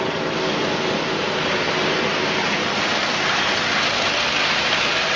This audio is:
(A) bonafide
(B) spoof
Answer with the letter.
A